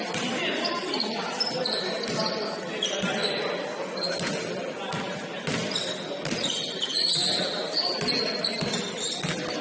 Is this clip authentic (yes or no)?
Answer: yes